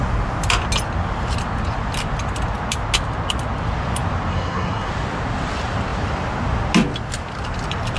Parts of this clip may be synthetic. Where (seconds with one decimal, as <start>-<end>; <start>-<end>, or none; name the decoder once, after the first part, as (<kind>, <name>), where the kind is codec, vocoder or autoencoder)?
4.3-4.9 (codec, SNAC)